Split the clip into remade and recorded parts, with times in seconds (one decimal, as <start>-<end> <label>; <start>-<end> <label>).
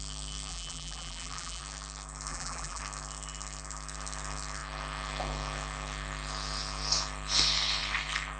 0.0-0.5 recorded; 0.5-1.6 remade; 1.6-2.3 recorded; 2.3-2.8 remade; 2.8-8.4 recorded